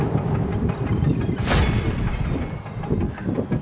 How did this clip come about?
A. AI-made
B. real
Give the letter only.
B